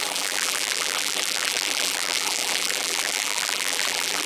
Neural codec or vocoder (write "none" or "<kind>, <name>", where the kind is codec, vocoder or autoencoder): vocoder, BigVGAN v2